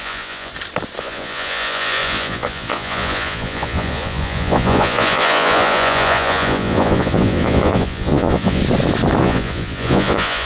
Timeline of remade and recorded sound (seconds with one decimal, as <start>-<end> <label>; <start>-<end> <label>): 0.0-0.5 remade; 0.5-1.0 recorded; 1.0-8.6 remade; 8.6-9.2 recorded; 9.2-10.5 remade